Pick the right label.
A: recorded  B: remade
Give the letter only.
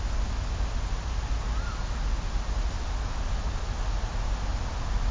A